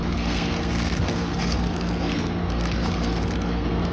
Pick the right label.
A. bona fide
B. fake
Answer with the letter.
B